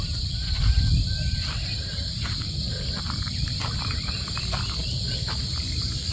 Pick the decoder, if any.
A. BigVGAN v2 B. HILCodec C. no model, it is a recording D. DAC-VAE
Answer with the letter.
A